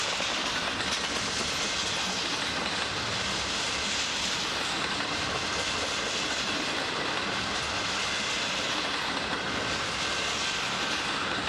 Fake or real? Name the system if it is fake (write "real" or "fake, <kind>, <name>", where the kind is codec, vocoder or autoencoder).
real